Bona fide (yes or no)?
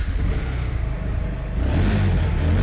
yes